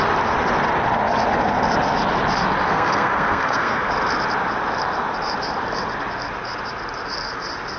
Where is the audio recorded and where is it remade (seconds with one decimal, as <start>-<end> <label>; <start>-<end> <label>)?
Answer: 0.0-2.7 recorded; 2.7-3.9 remade; 3.9-7.8 recorded